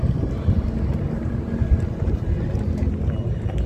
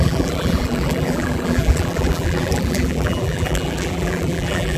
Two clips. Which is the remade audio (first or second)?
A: second